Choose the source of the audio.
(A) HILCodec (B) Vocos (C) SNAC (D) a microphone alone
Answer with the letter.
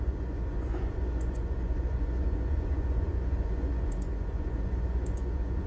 B